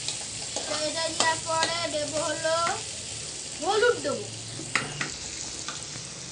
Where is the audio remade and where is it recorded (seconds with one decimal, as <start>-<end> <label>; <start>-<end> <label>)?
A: 0.0-6.3 recorded